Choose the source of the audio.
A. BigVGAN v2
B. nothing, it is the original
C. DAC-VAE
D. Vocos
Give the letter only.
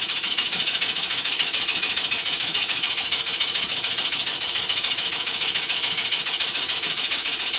C